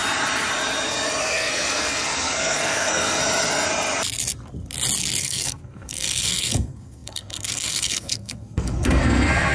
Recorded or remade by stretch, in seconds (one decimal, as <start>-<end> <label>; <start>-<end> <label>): 0.0-1.2 recorded; 1.2-3.2 remade; 3.2-5.2 recorded; 5.2-9.5 remade